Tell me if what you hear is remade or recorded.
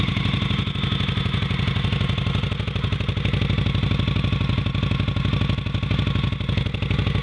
recorded